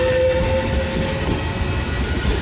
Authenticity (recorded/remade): recorded